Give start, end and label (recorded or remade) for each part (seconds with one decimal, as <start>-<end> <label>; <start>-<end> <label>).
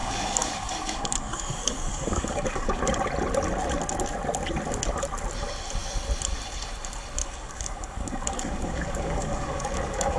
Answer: 0.0-2.8 remade; 2.8-7.2 recorded; 7.2-10.2 remade